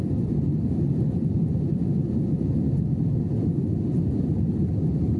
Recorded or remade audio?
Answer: recorded